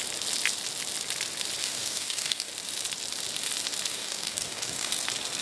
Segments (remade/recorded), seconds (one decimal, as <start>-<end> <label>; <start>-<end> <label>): 0.0-1.6 recorded; 1.6-2.5 remade; 2.5-3.9 recorded; 3.9-4.9 remade; 4.9-5.4 recorded